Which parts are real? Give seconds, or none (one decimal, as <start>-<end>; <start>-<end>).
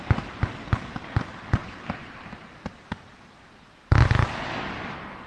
0.0-1.6; 2.5-5.3